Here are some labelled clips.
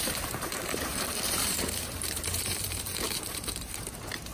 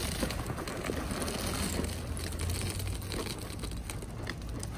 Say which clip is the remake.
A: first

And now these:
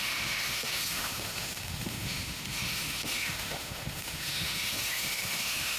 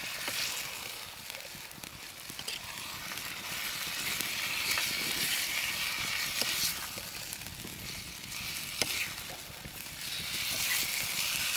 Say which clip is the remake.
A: first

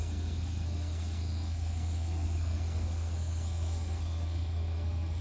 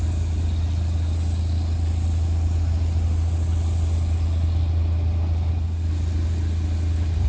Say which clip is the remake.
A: first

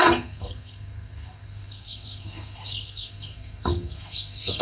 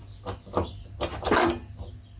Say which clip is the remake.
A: first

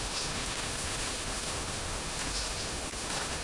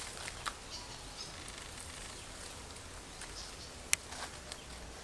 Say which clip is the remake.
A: first